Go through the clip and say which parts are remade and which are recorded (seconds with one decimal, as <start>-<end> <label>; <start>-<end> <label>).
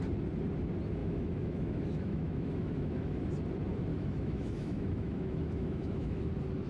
0.0-1.0 recorded; 1.0-3.2 remade; 3.2-3.9 recorded; 3.9-6.3 remade; 6.3-6.7 recorded